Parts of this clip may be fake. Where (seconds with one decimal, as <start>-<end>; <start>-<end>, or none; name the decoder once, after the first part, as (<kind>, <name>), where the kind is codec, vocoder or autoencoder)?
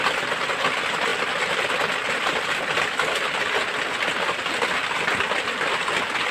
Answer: none